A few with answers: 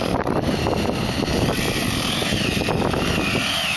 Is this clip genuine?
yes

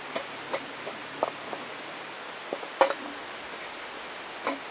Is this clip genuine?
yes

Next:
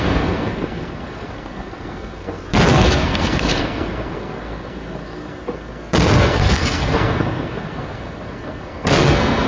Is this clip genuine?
no